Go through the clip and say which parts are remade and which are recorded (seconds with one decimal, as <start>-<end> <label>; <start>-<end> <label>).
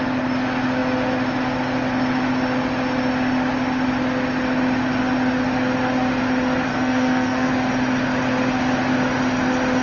0.0-6.7 recorded; 6.7-7.5 remade; 7.5-9.8 recorded